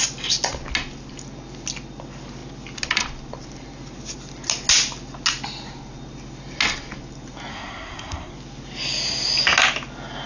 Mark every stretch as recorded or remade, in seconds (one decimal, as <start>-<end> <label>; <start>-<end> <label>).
0.0-7.5 recorded; 7.5-8.3 remade; 8.3-10.3 recorded